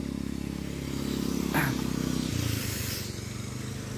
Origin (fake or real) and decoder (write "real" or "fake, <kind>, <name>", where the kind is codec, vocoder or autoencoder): real